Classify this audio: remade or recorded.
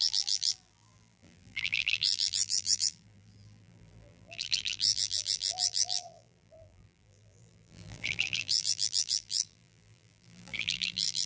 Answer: remade